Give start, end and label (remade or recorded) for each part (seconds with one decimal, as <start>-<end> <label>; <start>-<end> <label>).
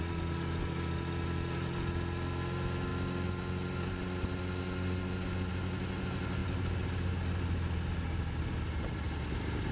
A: 0.0-9.7 recorded